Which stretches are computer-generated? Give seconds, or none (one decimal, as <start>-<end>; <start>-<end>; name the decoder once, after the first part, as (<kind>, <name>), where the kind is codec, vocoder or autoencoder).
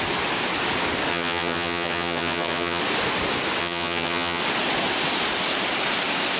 1.1-2.8 (vocoder, HiFi-GAN); 3.6-4.4